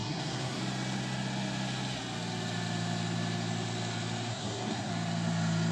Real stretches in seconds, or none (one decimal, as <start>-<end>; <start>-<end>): 0.6-4.3; 4.9-5.7